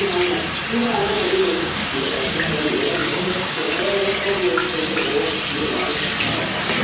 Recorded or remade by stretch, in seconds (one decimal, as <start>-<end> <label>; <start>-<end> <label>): 0.0-1.0 recorded; 1.0-2.4 remade; 2.4-3.0 recorded; 3.0-3.8 remade; 3.8-6.8 recorded